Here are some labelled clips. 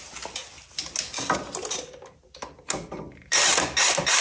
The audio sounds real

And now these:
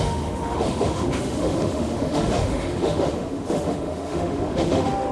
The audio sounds fake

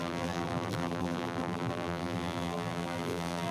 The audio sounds fake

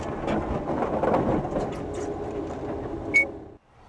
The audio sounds real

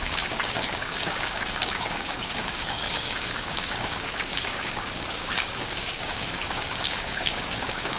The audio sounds fake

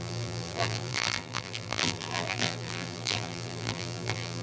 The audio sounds fake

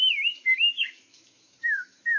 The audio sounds fake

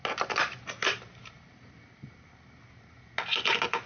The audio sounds real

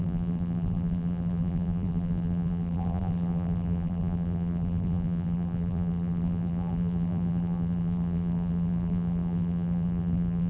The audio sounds fake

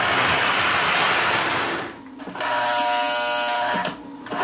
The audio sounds real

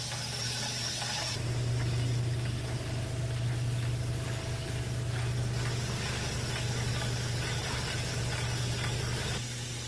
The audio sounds real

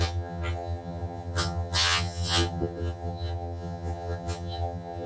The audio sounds fake